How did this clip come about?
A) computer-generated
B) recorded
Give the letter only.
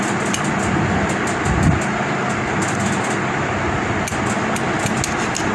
B